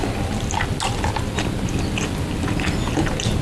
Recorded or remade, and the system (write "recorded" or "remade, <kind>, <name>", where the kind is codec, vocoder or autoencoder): recorded